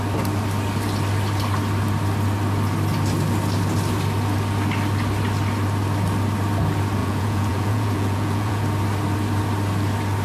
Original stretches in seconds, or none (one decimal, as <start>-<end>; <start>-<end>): 0.0-7.0; 8.6-10.2